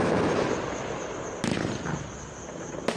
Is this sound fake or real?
real